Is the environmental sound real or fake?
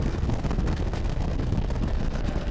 fake